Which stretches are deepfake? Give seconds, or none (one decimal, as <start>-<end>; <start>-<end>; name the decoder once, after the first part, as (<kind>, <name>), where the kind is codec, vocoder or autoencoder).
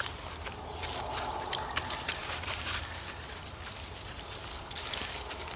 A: 4.5-5.6 (codec, DAC)